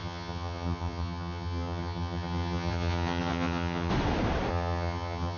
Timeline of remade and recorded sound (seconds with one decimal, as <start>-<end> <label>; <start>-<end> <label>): 0.0-3.9 remade; 3.9-4.5 recorded; 4.5-5.4 remade